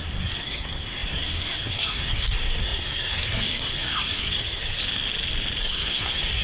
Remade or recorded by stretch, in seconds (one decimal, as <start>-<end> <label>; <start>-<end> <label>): 0.0-4.8 remade; 4.8-5.6 recorded; 5.6-6.4 remade